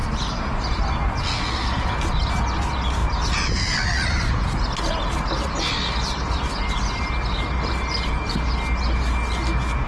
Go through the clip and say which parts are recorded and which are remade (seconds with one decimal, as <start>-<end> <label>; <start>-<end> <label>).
0.0-1.0 remade; 1.0-3.0 recorded; 3.0-4.3 remade; 4.3-9.9 recorded